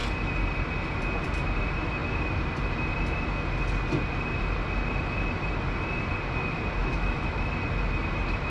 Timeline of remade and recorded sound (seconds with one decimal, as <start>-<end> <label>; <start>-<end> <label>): 0.0-6.8 recorded; 6.8-7.5 remade; 7.5-8.5 recorded